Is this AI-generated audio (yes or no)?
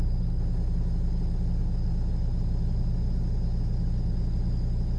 no